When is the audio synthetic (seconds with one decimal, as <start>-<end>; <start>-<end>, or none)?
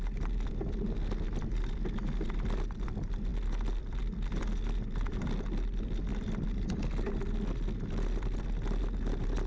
none